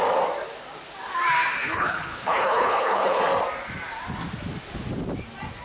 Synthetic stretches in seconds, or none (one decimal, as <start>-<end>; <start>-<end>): 1.6-3.2